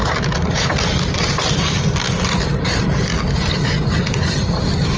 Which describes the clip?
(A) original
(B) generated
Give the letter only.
A